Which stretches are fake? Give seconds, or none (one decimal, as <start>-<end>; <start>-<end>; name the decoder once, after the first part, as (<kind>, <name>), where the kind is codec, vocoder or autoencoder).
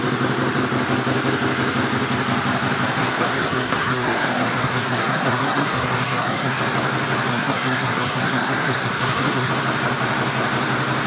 3.0-6.6 (codec, SNAC); 7.3-9.5